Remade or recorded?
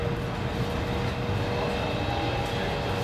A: recorded